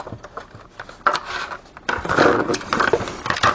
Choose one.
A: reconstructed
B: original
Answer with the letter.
B